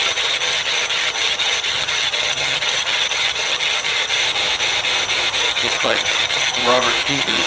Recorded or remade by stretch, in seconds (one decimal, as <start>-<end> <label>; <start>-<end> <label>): 0.0-4.2 remade; 4.2-5.4 recorded; 5.4-6.6 remade; 6.6-7.1 recorded; 7.1-7.5 remade